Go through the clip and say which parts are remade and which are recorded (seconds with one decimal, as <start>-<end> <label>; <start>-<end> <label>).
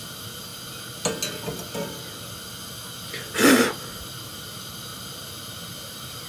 0.0-6.3 recorded